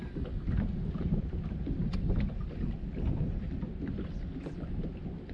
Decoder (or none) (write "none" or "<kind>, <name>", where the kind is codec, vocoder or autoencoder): none